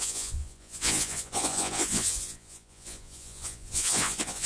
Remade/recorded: remade